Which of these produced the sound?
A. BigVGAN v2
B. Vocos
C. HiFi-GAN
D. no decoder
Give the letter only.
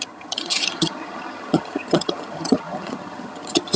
C